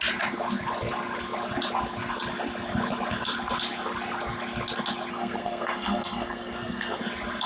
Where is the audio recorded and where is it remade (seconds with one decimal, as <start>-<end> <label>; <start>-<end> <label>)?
0.0-5.1 recorded; 5.1-7.0 remade; 7.0-7.5 recorded